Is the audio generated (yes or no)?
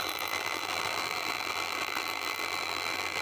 yes